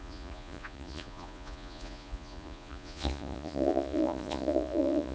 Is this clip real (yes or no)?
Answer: no